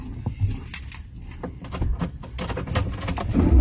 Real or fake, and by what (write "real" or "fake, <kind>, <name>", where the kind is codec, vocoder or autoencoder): real